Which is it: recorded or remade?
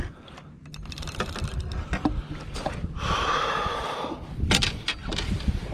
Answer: recorded